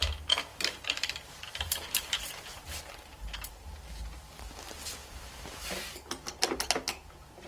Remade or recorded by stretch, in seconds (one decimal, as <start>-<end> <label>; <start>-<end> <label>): 0.0-0.5 recorded; 0.5-3.5 remade; 3.5-5.0 recorded; 5.0-6.1 remade; 6.1-7.5 recorded